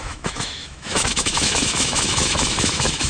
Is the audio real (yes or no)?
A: no